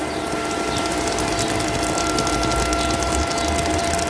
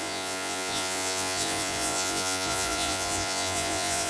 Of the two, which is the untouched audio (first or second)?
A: first